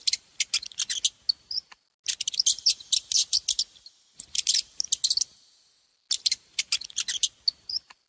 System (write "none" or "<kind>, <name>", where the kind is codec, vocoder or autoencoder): none